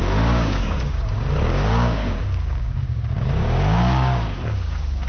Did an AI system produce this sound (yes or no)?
yes